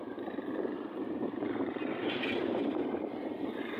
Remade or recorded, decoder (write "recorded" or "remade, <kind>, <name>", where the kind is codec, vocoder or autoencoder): remade, vocoder, BigVGAN v2